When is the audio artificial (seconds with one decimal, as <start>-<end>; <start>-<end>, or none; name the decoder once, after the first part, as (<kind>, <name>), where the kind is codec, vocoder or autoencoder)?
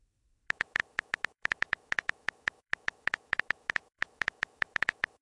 0.0-5.2 (autoencoder, DAC-VAE)